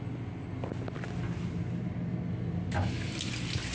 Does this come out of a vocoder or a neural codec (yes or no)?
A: no